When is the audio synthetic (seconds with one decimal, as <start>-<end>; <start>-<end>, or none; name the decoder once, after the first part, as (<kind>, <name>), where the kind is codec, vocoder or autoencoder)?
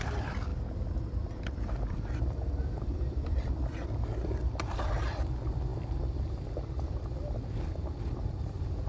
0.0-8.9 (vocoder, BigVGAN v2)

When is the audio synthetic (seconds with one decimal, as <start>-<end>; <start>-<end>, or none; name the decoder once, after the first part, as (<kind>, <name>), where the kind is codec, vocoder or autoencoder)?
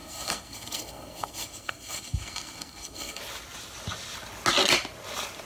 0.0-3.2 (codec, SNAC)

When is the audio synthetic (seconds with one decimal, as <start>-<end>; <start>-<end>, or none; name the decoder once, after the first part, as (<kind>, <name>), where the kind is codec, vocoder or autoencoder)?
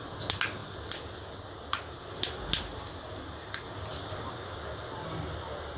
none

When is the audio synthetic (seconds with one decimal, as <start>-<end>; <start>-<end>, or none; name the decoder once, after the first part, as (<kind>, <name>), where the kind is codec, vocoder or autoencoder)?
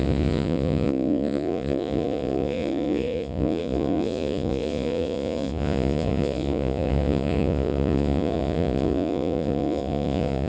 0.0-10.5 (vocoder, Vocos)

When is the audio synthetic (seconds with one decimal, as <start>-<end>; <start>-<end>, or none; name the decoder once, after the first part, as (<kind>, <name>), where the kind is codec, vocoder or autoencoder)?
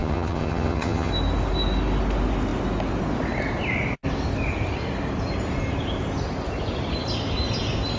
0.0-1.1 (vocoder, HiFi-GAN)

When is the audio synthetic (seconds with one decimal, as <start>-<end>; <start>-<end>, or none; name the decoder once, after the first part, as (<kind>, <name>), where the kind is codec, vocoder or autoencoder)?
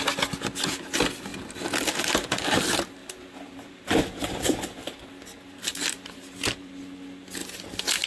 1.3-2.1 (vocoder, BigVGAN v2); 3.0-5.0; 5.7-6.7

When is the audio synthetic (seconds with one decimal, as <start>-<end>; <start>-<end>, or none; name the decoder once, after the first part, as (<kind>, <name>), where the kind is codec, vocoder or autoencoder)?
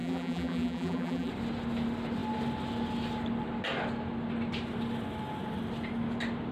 0.0-1.3 (vocoder, BigVGAN v2)